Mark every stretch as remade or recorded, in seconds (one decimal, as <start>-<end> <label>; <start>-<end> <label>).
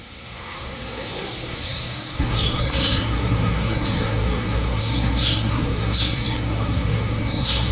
0.0-7.7 remade